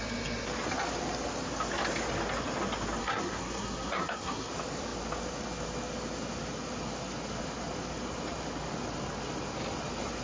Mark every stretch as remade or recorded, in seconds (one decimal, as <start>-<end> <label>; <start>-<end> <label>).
0.0-3.0 recorded; 3.0-4.5 remade; 4.5-10.2 recorded